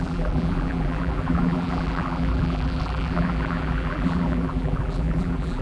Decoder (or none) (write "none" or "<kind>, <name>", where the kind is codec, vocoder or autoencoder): vocoder, BigVGAN v2